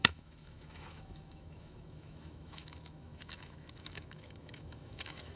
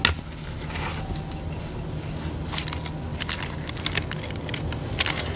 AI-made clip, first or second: first